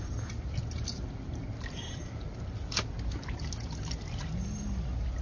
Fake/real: real